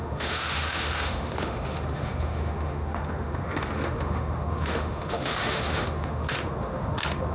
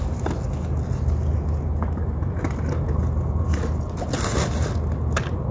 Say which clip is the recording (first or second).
second